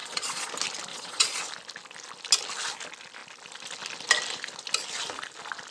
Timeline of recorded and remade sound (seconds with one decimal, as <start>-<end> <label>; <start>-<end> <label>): 0.0-0.5 remade; 0.5-0.9 recorded; 0.9-1.4 remade; 1.4-5.7 recorded